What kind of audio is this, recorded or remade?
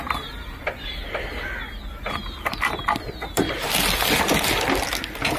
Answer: recorded